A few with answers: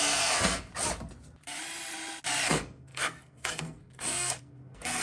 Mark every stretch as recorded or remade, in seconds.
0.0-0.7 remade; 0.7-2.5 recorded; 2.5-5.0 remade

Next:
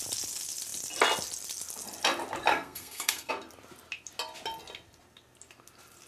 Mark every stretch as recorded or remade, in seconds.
0.0-2.5 recorded; 2.5-3.3 remade; 3.3-6.1 recorded